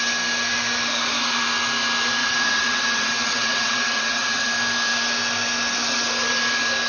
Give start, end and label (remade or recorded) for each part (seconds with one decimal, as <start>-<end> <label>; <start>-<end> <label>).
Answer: 0.0-2.2 recorded; 2.2-4.5 remade; 4.5-6.9 recorded